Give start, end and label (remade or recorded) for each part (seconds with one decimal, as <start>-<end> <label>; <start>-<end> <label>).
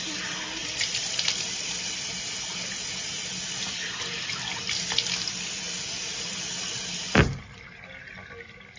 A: 0.0-0.6 recorded; 0.6-1.9 remade; 1.9-8.8 recorded